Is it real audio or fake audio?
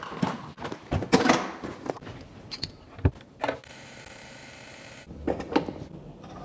real